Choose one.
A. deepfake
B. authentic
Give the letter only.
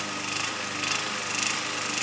B